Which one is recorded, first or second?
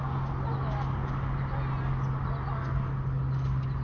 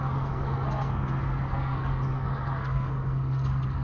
first